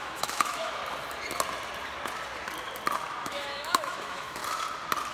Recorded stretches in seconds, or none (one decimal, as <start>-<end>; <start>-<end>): 0.8-3.2; 4.4-5.1